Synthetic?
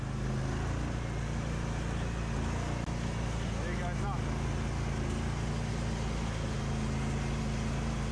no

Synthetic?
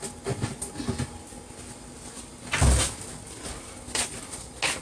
no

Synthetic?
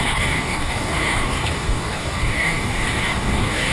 yes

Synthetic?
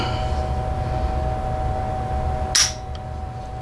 no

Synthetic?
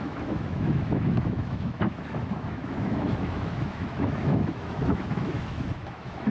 yes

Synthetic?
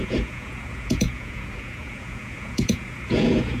yes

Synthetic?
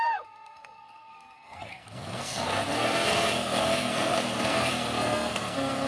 yes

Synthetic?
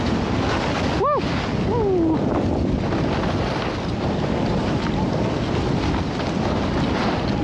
no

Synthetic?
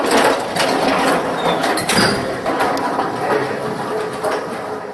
no